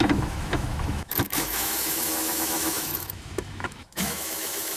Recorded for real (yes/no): no